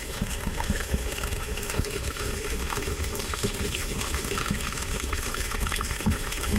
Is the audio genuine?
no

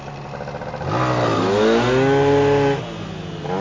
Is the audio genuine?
yes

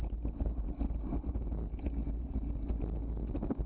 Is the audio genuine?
yes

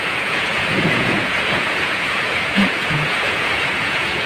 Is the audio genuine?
no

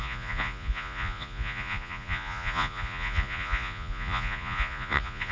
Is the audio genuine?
no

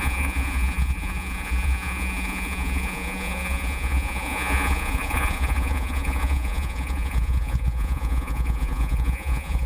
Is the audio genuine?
no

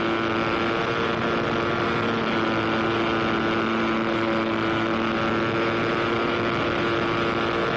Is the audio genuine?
yes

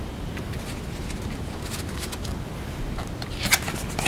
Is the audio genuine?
yes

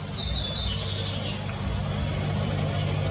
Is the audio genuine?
yes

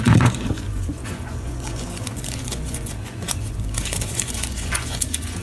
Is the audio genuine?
no